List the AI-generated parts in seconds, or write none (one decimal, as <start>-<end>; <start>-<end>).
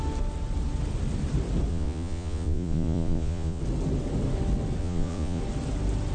1.7-3.6; 4.8-5.4